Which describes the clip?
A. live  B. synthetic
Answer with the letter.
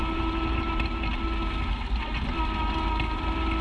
A